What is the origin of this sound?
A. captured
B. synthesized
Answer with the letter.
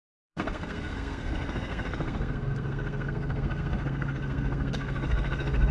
B